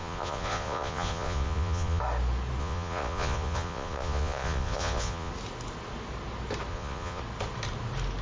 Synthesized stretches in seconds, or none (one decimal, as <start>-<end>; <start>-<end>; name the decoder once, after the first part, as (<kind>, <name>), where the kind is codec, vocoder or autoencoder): 0.0-2.0 (vocoder, Vocos); 2.6-5.3; 6.7-7.2